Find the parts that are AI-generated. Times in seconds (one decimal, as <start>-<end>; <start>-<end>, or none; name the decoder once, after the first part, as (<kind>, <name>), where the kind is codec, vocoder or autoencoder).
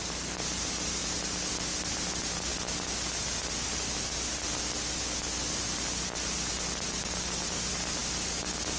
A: none